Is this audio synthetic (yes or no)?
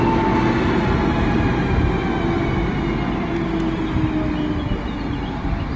no